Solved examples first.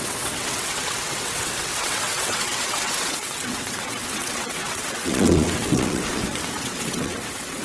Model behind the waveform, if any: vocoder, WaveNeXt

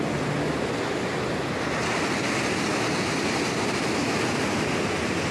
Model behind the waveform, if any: none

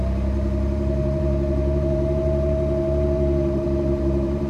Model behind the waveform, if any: vocoder, BigVGAN v2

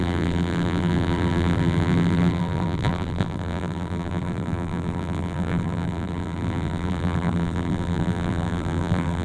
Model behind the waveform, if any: vocoder, BigVGAN v2